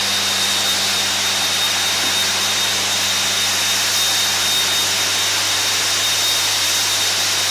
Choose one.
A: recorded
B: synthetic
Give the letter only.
A